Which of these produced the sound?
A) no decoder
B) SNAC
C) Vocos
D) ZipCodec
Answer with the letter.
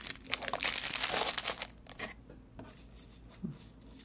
A